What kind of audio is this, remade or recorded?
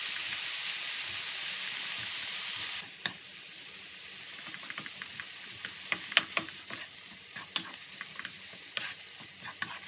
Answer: recorded